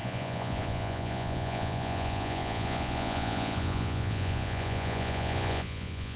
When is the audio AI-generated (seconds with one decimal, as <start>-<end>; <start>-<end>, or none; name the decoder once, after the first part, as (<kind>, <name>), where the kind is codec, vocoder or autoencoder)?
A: 0.0-6.2 (vocoder, Vocos)